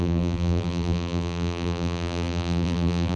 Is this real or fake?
fake